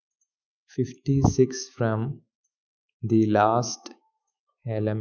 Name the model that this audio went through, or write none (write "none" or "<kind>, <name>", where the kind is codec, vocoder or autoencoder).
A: autoencoder, DAC-VAE